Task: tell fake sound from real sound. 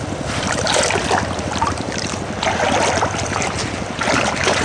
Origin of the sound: real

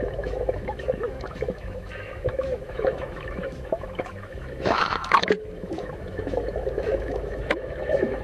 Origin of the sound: fake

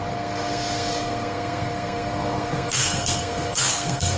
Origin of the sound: fake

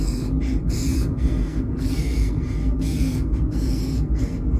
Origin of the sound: fake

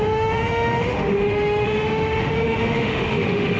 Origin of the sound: fake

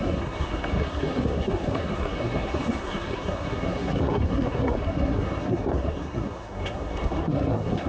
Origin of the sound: fake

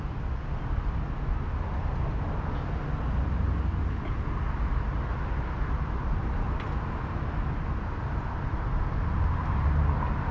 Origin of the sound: real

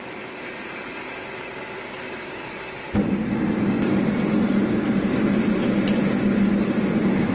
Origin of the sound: real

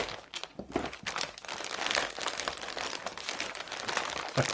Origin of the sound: real